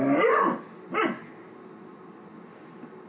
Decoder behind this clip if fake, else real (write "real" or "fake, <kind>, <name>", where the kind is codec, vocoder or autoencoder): real